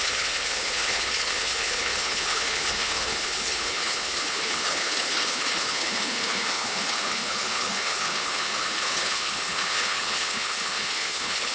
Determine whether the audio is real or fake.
fake